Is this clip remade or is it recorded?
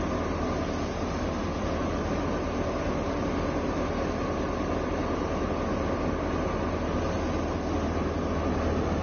recorded